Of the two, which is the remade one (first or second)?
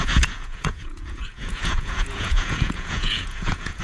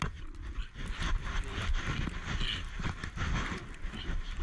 first